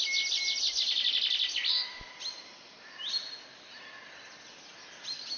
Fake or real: real